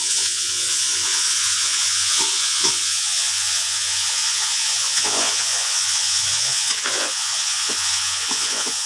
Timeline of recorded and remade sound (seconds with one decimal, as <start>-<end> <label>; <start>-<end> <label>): 0.0-8.9 remade